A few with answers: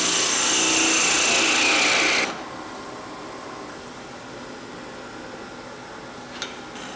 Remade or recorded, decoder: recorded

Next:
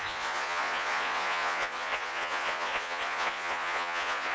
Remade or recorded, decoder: remade, vocoder, Vocos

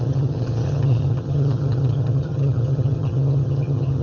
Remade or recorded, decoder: remade, vocoder, HiFi-GAN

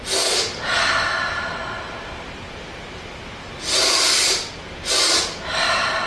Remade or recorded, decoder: recorded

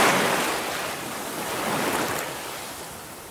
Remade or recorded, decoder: recorded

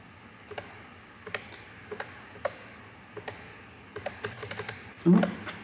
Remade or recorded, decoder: recorded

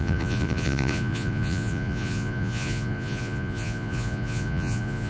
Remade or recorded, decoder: remade, vocoder, Vocos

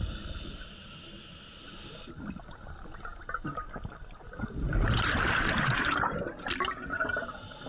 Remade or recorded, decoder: recorded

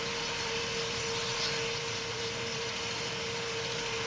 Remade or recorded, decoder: recorded